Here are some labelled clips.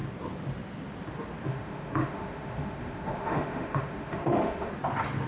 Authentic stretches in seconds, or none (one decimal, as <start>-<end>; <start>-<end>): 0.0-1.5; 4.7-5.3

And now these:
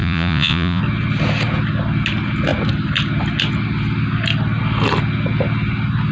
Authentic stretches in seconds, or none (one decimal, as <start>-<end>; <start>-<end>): 0.8-6.1

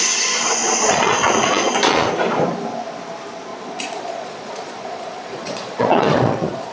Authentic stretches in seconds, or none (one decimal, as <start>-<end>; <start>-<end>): 0.0-0.6; 2.1-3.5

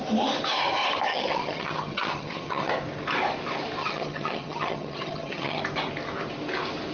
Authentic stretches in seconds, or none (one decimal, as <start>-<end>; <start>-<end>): 0.0-1.1; 2.7-3.8; 5.6-6.9

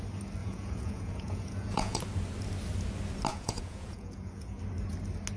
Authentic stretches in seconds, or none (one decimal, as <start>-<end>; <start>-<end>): 0.0-0.4; 2.0-3.3; 4.6-5.4